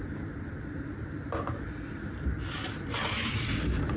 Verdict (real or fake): real